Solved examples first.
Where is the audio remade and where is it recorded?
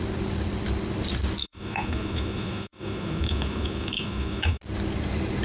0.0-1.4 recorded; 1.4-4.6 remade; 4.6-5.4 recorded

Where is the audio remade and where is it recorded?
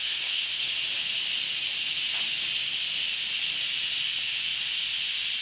0.0-0.7 remade; 0.7-5.4 recorded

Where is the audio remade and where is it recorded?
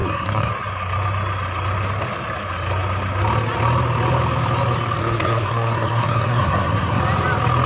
0.0-0.5 remade; 0.5-5.0 recorded; 5.0-7.0 remade; 7.0-7.7 recorded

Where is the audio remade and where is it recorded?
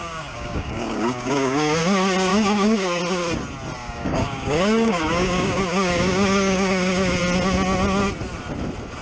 0.0-1.8 remade; 1.8-2.3 recorded; 2.3-3.0 remade; 3.0-3.8 recorded; 3.8-7.2 remade; 7.2-9.0 recorded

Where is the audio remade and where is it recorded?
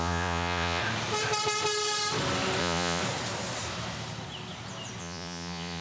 0.0-0.8 remade; 0.8-2.6 recorded; 2.6-3.0 remade; 3.0-5.0 recorded; 5.0-5.8 remade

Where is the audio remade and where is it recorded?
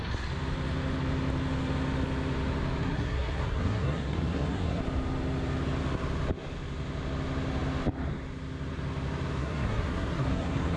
0.0-2.8 recorded; 2.8-4.8 remade; 4.8-9.4 recorded; 9.4-10.8 remade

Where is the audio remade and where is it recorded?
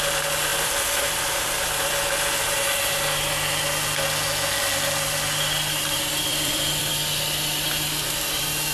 0.0-0.5 recorded; 0.5-1.9 remade; 1.9-6.3 recorded; 6.3-6.9 remade; 6.9-8.7 recorded